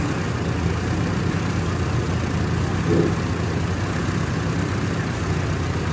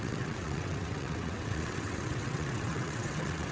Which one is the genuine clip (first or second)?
first